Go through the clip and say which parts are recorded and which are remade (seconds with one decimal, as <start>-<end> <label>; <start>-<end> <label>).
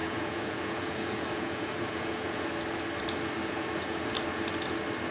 0.0-2.5 remade; 2.5-3.4 recorded; 3.4-4.1 remade; 4.1-5.1 recorded